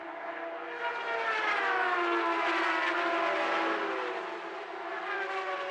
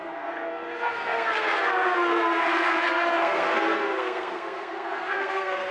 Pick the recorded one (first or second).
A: first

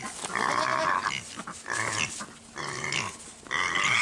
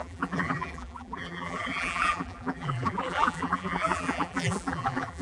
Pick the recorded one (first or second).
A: first